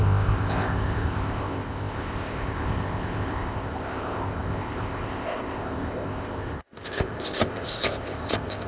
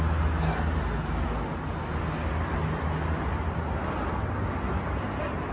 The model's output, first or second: first